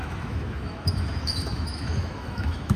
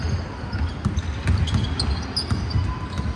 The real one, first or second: second